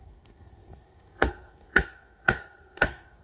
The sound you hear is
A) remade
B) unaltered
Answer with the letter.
A